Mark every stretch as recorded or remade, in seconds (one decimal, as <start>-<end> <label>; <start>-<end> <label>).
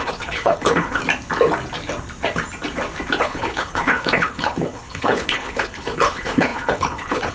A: 0.0-1.0 remade; 1.0-3.2 recorded; 3.2-7.3 remade